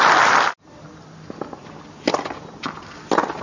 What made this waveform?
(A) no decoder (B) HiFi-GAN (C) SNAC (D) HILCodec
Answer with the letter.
A